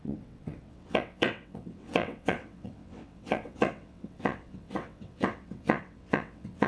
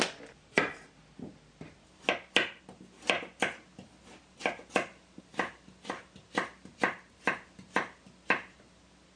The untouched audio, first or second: second